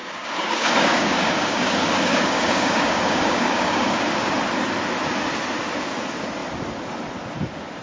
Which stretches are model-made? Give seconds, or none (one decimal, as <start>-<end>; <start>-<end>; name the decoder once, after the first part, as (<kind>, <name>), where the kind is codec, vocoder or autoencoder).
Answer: 0.0-4.3 (codec, DAC)